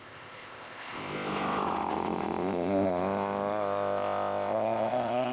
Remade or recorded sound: remade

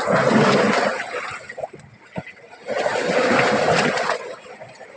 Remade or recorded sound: recorded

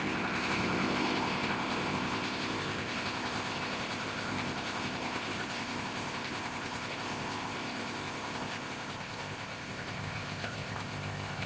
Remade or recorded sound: remade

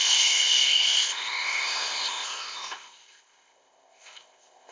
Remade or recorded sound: remade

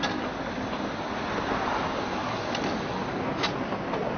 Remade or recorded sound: recorded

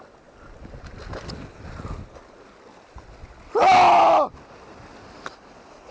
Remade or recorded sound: recorded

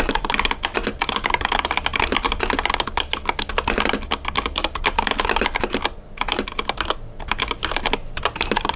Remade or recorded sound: recorded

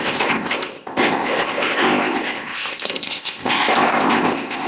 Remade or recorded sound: remade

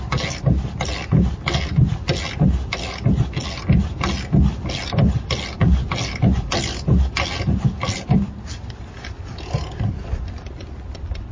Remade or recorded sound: recorded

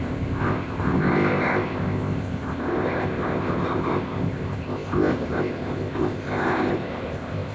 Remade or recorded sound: remade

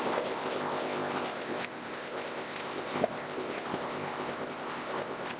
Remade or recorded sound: remade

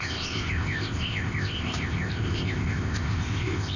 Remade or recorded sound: remade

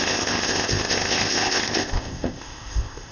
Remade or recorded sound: remade